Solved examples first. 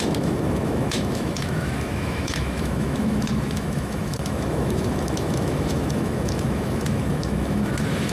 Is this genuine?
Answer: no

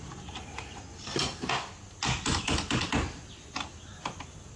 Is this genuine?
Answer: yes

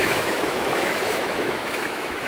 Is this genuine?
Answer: no